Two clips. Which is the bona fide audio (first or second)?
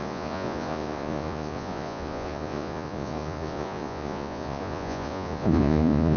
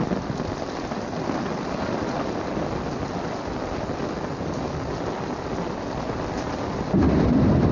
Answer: second